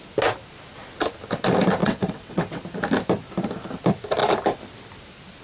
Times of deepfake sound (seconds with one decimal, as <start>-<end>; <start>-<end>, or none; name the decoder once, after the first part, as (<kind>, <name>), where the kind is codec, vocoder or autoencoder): 1.8-2.6 (vocoder, WaveNeXt)